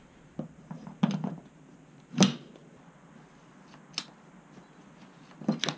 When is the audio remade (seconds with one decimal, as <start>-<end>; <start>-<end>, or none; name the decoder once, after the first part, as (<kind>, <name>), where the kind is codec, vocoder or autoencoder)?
none